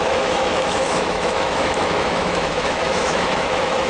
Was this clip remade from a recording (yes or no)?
yes